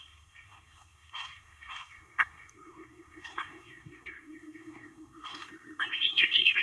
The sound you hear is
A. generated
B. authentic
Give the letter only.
A